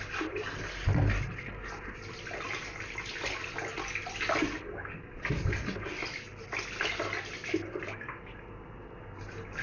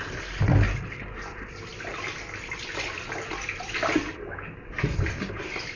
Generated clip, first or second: second